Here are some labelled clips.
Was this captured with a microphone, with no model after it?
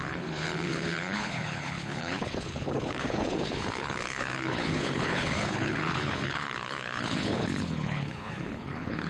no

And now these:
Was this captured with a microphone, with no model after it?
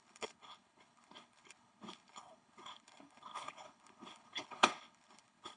no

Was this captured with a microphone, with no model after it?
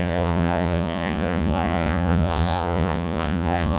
no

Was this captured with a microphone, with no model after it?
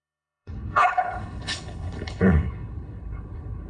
no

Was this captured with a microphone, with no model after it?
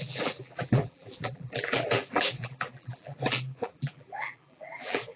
no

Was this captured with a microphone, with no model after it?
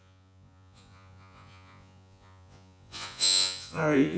no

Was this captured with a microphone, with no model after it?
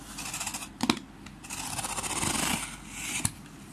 yes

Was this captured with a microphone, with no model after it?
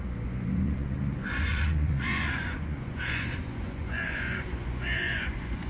no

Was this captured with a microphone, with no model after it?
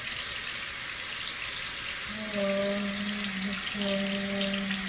yes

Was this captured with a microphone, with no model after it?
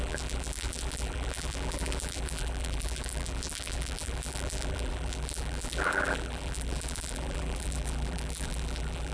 no